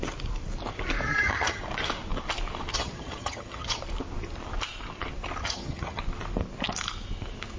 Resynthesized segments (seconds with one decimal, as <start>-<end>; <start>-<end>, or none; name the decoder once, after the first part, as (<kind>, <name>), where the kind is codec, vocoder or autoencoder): 1.1-1.6 (vocoder, HiFi-GAN); 2.7-3.8; 5.4-6.0

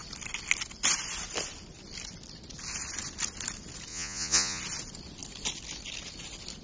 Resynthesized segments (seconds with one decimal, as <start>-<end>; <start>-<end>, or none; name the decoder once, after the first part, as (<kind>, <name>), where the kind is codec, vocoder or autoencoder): 3.9-4.6 (vocoder, Vocos)

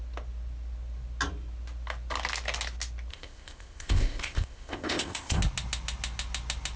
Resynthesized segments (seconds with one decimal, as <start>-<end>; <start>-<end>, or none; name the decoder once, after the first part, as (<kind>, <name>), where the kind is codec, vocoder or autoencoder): 3.1-5.4 (codec, ZipCodec)

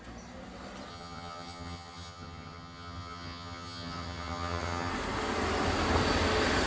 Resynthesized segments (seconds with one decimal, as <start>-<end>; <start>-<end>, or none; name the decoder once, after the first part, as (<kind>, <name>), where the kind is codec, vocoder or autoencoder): 0.9-4.9 (vocoder, HiFi-GAN)

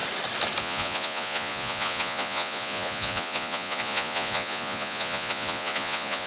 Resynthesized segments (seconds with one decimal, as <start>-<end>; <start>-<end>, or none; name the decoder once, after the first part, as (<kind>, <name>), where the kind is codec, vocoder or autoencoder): 0.6-6.3 (vocoder, Vocos)

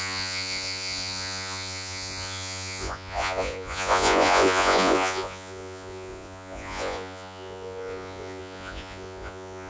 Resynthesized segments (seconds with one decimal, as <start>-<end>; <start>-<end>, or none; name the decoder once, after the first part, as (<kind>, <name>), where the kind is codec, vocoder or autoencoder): 0.0-9.7 (vocoder, Vocos)

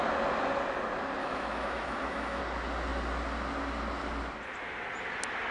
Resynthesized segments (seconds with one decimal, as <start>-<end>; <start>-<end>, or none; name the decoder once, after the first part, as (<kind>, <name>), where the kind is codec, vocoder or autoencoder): 1.2-2.4 (autoencoder, DAC-VAE)

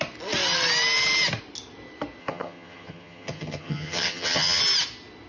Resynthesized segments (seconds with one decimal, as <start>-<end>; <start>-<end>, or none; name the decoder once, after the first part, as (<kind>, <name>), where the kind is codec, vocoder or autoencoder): 2.2-4.6 (vocoder, HiFi-GAN)